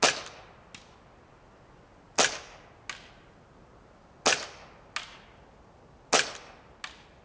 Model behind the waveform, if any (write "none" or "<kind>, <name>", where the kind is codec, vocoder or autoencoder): none